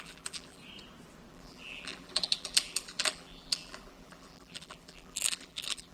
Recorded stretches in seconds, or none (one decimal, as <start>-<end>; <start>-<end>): 0.6-1.3